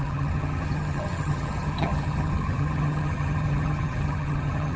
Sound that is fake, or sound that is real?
fake